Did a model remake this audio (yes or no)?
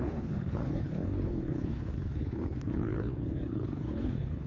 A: yes